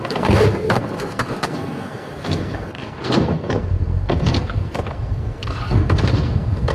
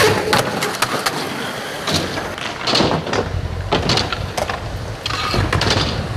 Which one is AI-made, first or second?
first